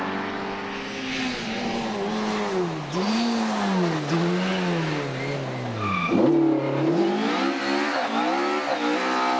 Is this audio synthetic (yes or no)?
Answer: no